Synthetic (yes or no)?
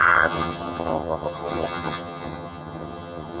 yes